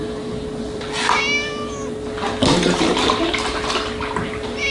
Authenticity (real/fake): real